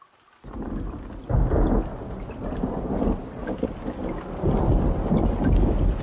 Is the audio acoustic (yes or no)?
yes